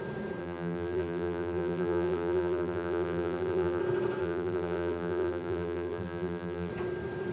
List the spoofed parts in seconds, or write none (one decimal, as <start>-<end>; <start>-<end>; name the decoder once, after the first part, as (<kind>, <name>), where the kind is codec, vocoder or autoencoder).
0.4-3.8 (vocoder, BigVGAN v2); 4.2-6.7